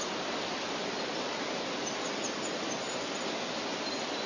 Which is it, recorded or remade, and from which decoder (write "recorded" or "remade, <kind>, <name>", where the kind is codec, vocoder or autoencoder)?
recorded